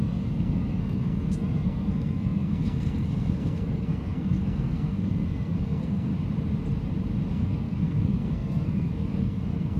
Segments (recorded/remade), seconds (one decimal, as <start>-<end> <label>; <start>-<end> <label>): 0.0-6.1 remade; 6.1-7.3 recorded; 7.3-9.8 remade